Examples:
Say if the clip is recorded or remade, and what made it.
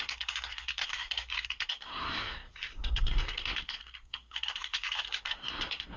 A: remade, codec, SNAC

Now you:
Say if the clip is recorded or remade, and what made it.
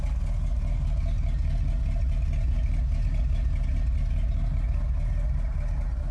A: recorded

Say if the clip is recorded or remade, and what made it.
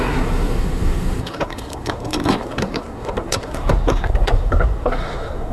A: remade, codec, SNAC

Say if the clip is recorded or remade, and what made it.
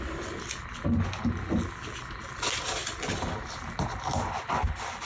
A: recorded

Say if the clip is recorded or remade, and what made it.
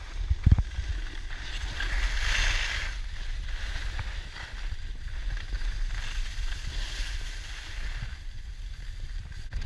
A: recorded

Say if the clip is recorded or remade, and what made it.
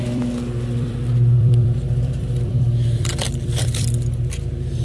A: remade, vocoder, BigVGAN v2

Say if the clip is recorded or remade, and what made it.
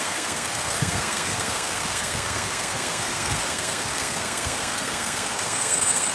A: remade, codec, SNAC